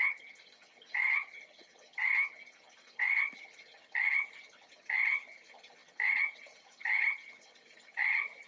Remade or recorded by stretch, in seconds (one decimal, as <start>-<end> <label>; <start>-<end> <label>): 0.0-8.5 remade